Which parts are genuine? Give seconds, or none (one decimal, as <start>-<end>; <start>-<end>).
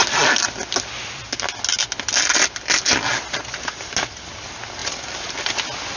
0.0-6.0